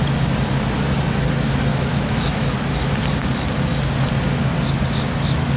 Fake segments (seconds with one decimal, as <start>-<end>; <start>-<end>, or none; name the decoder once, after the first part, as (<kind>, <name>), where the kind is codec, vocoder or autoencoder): 1.7-2.5 (autoencoder, DAC-VAE)